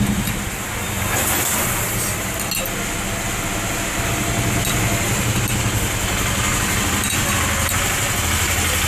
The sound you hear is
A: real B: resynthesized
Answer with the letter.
A